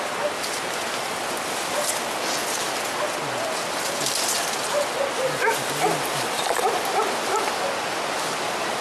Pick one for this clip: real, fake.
real